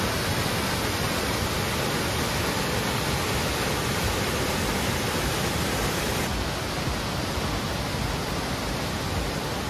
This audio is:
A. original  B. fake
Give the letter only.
A